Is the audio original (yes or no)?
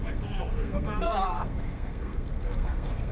no